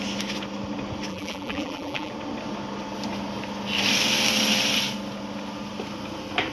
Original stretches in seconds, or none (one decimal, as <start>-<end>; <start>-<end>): 0.0-1.1; 2.1-6.5